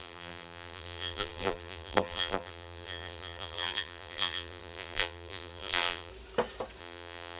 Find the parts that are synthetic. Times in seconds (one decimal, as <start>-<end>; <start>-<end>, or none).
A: 0.0-6.1; 6.8-7.4